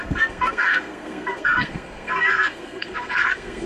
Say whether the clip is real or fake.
fake